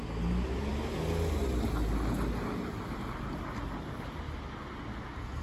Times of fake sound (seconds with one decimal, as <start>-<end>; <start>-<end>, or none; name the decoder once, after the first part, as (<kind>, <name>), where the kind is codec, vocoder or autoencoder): none